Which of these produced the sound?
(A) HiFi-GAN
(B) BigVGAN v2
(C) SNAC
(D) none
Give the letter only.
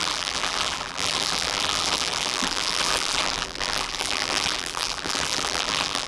B